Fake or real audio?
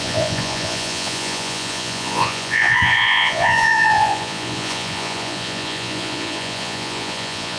fake